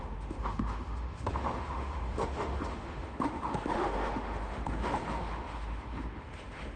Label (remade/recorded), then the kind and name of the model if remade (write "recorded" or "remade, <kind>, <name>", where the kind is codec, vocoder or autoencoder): remade, autoencoder, DAC-VAE